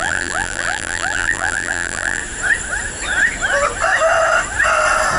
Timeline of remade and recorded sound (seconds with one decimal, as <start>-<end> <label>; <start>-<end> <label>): 0.0-2.2 remade; 2.2-5.2 recorded